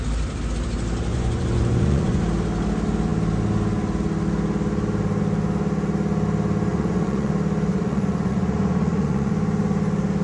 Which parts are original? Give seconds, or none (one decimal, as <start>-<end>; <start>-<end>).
0.0-1.1; 2.2-6.7; 7.3-7.7; 9.3-10.2

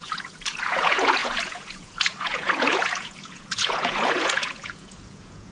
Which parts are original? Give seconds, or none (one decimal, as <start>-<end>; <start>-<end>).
none

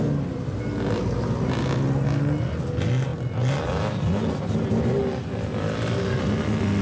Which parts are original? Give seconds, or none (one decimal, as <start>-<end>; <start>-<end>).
0.0-6.8

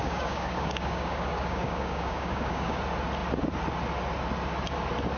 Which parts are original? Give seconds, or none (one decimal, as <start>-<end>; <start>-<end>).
2.8-5.2

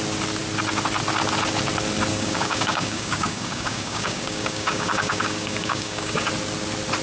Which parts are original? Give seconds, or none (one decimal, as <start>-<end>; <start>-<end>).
0.0-2.1; 6.3-7.0

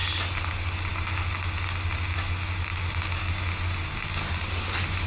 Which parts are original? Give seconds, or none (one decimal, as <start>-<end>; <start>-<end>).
0.0-5.1

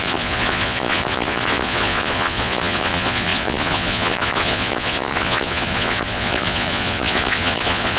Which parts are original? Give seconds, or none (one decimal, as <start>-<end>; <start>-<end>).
none